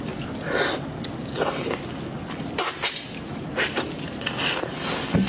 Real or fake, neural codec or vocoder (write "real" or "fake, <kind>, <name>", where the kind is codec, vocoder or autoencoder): real